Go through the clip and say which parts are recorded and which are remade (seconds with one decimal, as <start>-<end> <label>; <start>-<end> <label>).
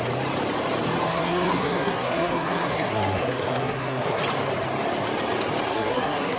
0.0-1.1 recorded; 1.1-4.2 remade; 4.2-5.7 recorded; 5.7-6.4 remade